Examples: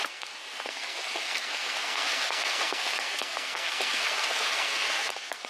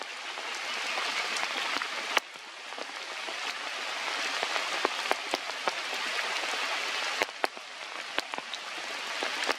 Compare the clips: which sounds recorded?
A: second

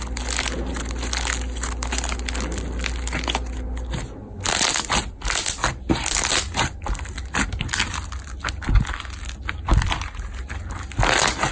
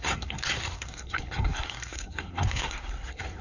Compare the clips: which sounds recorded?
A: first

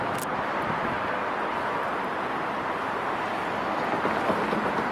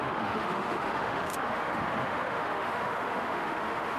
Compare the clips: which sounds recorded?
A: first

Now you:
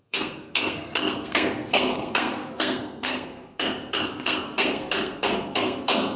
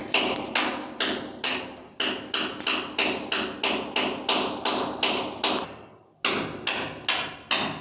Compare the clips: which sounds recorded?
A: second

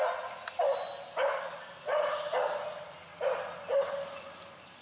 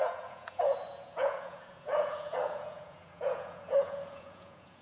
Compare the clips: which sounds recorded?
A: first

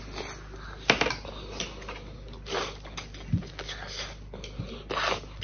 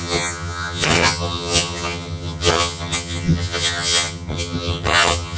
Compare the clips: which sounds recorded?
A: first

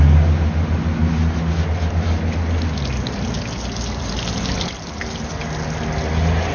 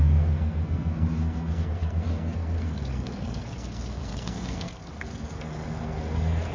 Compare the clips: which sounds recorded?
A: first